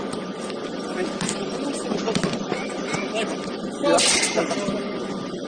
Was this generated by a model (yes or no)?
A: no